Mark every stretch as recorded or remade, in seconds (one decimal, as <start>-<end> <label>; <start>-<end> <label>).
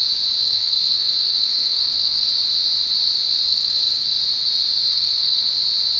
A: 0.0-0.4 recorded; 0.4-2.3 remade; 2.3-3.5 recorded; 3.5-4.2 remade; 4.2-4.9 recorded; 4.9-5.5 remade; 5.5-6.0 recorded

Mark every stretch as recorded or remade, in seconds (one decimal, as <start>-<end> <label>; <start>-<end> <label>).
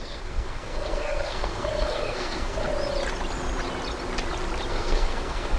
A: 0.0-2.7 remade; 2.7-4.7 recorded; 4.7-5.6 remade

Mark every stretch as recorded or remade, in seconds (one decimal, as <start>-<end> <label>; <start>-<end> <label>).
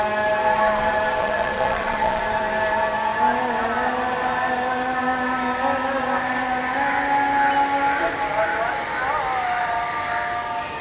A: 0.0-1.2 recorded; 1.2-2.2 remade; 2.2-10.8 recorded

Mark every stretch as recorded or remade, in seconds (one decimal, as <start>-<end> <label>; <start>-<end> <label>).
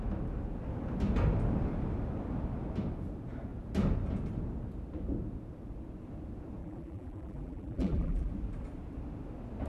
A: 0.0-6.6 recorded; 6.6-8.3 remade; 8.3-9.7 recorded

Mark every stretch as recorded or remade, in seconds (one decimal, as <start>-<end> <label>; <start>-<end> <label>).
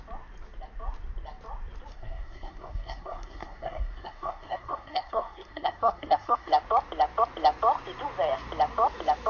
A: 0.0-1.9 recorded; 1.9-6.5 remade; 6.5-9.3 recorded